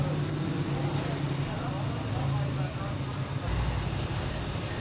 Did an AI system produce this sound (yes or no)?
no